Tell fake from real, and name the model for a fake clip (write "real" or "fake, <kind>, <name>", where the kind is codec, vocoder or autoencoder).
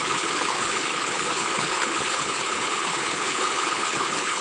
fake, codec, HILCodec